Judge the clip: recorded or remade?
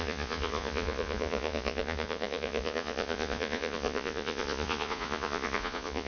remade